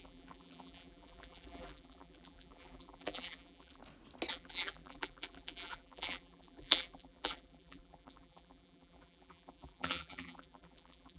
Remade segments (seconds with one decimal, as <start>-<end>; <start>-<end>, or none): 0.0-3.8; 4.3-11.2